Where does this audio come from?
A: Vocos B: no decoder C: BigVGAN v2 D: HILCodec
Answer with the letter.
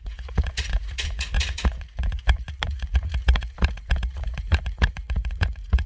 A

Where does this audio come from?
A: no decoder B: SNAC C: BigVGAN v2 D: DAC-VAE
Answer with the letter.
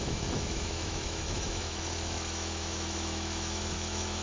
D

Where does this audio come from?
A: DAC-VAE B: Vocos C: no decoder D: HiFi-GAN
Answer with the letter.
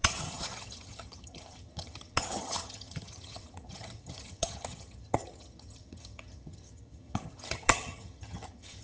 D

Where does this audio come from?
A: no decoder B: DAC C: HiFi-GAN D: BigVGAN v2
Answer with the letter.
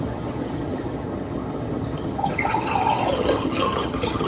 C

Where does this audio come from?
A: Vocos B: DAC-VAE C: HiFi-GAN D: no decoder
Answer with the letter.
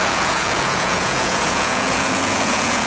A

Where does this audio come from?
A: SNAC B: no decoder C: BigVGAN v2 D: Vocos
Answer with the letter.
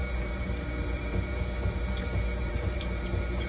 C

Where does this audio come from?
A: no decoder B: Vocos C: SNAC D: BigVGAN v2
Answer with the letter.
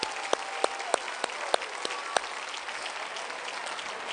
A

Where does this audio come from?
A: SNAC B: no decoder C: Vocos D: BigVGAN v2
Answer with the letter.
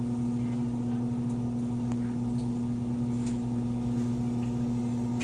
B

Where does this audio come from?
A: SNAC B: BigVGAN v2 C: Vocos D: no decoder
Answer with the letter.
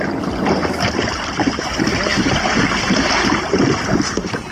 B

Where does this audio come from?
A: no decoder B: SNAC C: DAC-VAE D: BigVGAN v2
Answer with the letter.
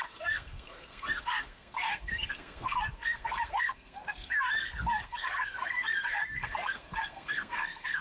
B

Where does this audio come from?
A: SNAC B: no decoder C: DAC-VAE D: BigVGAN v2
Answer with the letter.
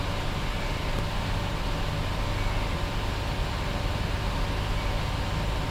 B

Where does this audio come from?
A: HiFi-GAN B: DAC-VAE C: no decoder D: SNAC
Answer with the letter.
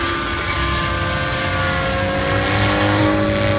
C